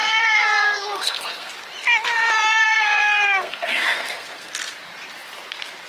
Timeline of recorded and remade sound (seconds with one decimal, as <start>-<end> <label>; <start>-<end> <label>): 0.0-1.5 remade; 1.5-2.6 recorded; 2.6-4.5 remade; 4.5-5.9 recorded